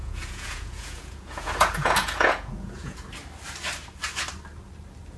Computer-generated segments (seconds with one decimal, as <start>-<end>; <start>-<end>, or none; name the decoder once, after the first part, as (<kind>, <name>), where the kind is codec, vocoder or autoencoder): 0.0-3.1 (vocoder, Vocos)